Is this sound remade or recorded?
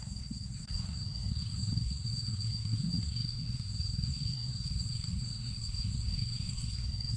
remade